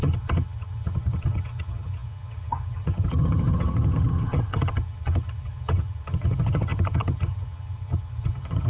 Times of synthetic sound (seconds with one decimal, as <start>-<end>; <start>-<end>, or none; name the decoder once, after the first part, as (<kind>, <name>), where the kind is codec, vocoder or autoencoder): 0.0-8.7 (vocoder, HiFi-GAN)